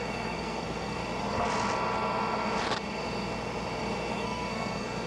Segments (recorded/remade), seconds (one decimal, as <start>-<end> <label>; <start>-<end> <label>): 0.0-1.0 remade; 1.0-4.1 recorded; 4.1-5.1 remade